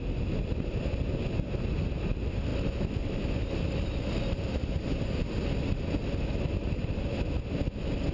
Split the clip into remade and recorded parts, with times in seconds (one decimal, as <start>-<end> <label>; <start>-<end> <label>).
0.0-8.1 recorded